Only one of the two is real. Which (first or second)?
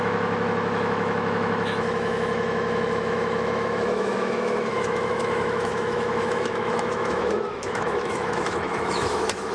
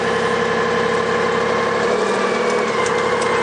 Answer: second